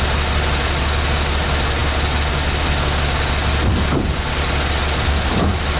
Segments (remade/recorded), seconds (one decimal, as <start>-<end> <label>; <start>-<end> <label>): 0.0-5.8 recorded